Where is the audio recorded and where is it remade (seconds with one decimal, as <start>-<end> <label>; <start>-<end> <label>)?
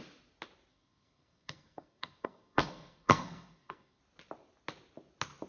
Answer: 0.0-0.7 recorded; 0.7-4.0 remade; 4.0-5.5 recorded